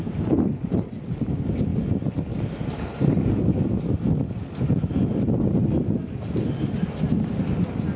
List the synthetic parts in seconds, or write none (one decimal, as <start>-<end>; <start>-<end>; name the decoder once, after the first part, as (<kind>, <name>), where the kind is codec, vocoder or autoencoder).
none